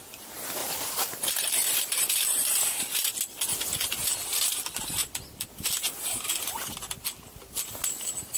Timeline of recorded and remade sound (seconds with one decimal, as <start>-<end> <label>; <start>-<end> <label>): 0.0-0.6 recorded; 0.6-3.1 remade; 3.1-8.4 recorded